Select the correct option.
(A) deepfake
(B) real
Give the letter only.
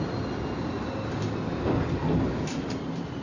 B